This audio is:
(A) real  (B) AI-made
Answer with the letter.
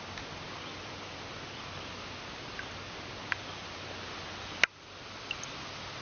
A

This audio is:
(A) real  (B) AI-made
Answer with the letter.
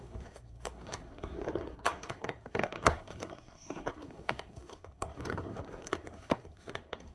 B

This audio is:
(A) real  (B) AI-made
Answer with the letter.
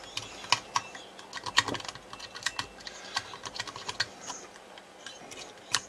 A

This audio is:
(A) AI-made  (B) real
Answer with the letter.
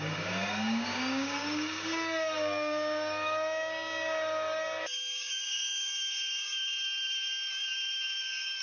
A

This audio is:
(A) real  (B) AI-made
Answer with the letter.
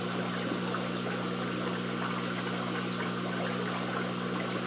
A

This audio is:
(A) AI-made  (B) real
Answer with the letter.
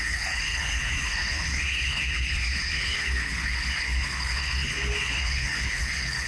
A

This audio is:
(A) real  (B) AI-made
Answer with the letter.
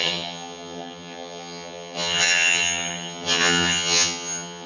B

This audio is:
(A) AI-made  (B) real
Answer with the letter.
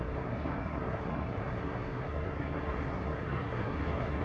A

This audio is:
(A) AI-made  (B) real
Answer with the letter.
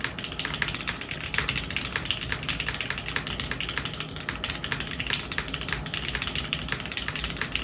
B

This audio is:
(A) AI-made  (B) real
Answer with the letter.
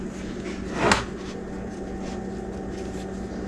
B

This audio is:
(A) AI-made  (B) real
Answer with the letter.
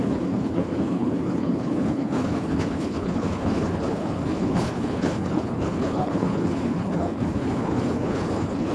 A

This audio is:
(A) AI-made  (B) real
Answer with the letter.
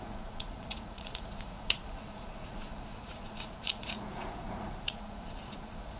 A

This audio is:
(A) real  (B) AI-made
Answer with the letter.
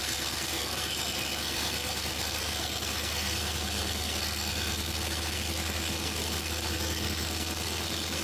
B